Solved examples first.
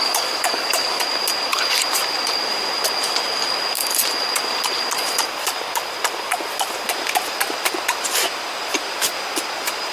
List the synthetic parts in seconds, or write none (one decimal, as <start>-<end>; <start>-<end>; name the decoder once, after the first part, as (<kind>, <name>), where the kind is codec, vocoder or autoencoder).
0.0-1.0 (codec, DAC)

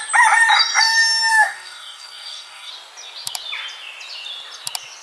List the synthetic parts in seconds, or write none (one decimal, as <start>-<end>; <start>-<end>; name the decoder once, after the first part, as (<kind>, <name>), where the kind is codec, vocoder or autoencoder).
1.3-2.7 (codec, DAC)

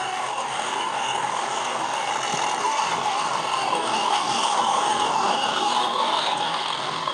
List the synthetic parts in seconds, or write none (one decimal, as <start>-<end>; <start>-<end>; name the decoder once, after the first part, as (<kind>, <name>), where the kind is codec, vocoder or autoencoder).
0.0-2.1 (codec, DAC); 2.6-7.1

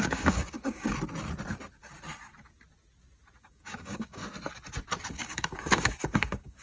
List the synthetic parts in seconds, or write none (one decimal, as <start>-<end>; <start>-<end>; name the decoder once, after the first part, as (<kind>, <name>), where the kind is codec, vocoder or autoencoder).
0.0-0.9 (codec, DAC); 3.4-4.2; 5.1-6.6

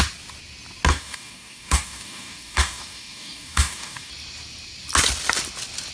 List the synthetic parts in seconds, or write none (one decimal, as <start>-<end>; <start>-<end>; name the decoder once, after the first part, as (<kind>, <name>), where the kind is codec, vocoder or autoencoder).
0.9-4.1 (codec, DAC)

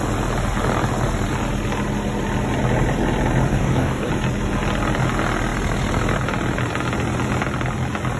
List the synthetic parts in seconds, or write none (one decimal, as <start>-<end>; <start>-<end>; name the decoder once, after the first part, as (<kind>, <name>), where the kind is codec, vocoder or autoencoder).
3.5-4.1 (codec, DAC)

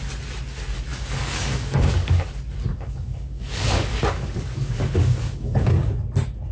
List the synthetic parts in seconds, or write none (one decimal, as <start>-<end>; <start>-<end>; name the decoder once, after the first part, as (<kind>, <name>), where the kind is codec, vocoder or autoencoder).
0.9-2.3 (codec, DAC); 2.7-5.9